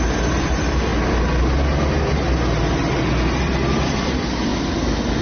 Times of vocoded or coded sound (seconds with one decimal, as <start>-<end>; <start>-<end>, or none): 0.0-0.9; 3.4-4.5